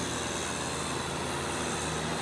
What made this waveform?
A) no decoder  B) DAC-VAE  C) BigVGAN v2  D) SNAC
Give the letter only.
A